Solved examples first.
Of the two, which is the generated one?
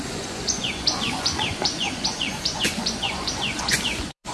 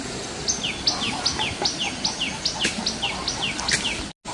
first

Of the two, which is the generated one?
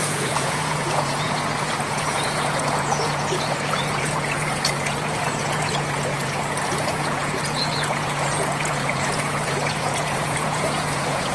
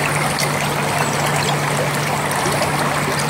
first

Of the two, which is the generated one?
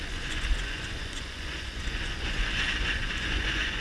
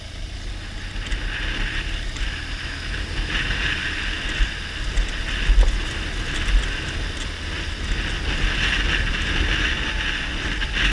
first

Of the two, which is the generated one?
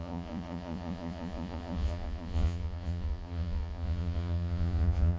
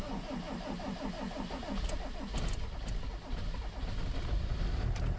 first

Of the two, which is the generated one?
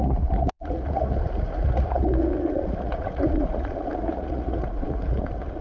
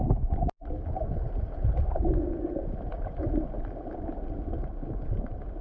first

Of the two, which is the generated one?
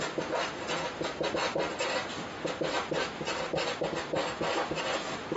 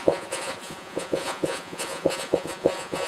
second